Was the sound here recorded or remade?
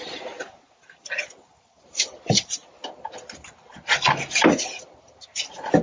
recorded